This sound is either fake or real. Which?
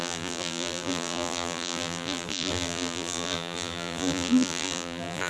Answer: fake